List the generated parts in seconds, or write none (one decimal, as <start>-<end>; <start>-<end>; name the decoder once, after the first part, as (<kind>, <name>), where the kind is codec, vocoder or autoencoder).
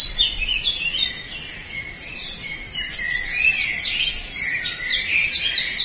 none